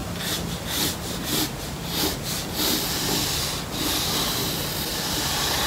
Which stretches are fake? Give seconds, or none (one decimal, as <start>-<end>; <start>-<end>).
none